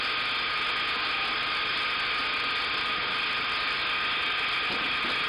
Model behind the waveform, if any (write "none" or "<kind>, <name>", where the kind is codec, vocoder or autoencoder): none